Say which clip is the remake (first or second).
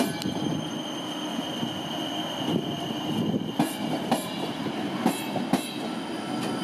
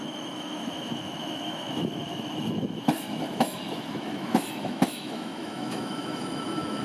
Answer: second